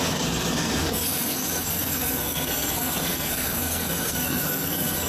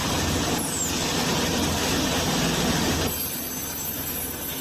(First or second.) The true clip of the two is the second